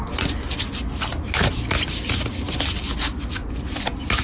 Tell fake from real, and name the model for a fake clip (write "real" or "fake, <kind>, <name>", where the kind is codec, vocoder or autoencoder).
real